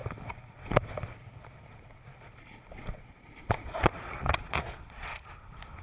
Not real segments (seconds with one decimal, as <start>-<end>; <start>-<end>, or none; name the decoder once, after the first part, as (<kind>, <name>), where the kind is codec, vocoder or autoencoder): 2.7-5.3 (vocoder, Vocos)